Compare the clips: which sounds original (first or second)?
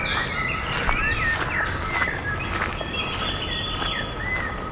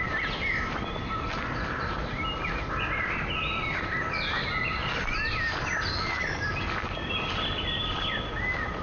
first